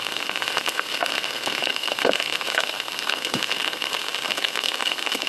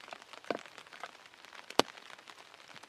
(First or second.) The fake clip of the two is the first